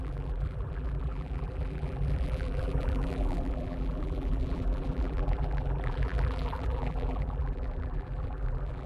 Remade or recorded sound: remade